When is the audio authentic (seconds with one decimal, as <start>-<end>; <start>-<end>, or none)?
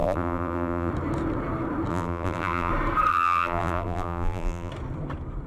0.9-1.9; 2.7-3.1; 4.7-5.5